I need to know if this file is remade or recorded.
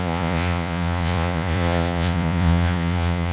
remade